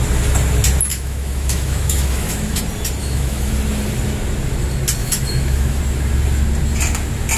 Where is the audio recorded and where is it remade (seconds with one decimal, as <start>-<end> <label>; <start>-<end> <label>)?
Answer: 0.0-0.9 recorded; 0.9-2.6 remade; 2.6-3.0 recorded; 3.0-3.5 remade; 3.5-5.0 recorded; 5.0-5.8 remade; 5.8-7.4 recorded